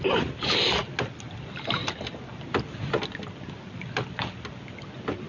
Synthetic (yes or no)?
no